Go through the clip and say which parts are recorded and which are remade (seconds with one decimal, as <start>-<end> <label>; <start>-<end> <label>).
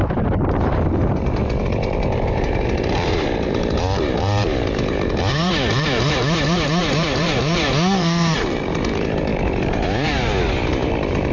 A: 0.0-11.3 remade